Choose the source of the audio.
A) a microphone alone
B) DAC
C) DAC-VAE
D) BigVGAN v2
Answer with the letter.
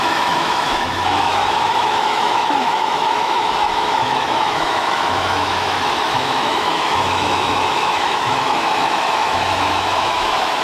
C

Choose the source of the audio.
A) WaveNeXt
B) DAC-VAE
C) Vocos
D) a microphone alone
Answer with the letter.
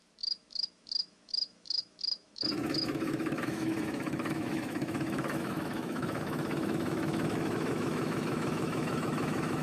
B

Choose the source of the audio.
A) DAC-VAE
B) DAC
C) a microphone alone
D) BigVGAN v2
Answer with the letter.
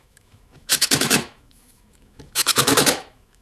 A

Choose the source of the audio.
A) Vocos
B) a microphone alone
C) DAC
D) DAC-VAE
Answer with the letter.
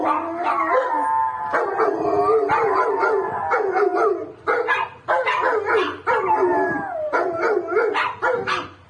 B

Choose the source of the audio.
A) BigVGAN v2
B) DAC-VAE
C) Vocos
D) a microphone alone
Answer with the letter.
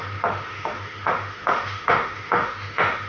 B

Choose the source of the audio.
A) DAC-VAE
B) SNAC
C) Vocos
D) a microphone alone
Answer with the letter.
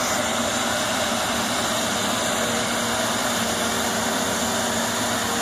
D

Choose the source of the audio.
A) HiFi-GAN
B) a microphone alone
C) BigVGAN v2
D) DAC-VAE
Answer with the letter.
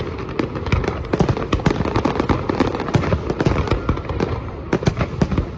B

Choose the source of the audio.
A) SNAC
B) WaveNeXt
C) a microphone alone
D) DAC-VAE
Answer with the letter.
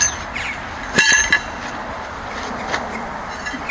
C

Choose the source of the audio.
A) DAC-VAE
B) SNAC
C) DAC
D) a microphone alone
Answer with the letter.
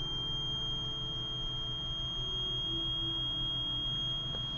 D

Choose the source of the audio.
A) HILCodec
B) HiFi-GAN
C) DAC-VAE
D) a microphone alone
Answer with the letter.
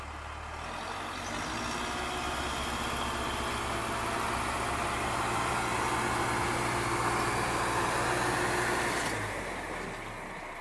D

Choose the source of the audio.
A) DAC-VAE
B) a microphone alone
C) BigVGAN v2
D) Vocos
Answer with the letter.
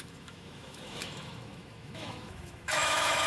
A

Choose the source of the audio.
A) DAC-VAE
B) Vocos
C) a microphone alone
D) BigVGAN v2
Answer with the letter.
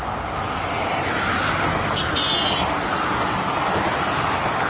C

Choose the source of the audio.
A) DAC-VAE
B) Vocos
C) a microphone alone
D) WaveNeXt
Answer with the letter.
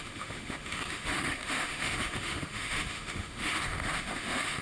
A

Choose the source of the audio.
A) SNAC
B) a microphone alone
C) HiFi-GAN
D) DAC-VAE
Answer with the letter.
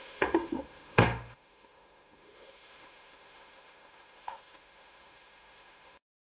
D